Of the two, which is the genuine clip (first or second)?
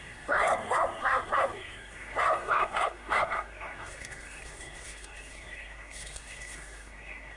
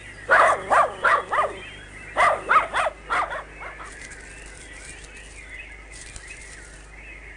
second